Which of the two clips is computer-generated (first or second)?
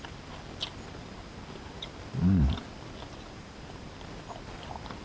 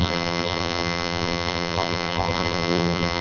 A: second